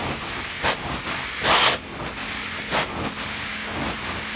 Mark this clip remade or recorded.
recorded